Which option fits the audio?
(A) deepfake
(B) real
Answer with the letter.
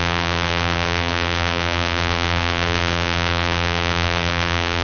A